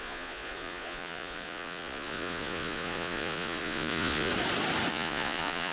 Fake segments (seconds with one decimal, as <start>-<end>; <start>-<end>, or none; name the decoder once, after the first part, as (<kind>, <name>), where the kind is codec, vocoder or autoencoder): 0.0-4.3 (vocoder, Vocos); 4.9-5.7